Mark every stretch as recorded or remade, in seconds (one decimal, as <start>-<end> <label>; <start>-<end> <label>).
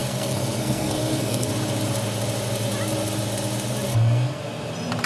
0.0-1.5 remade; 1.5-3.9 recorded; 3.9-4.4 remade; 4.4-5.1 recorded